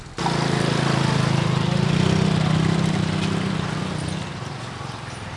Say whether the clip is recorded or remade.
recorded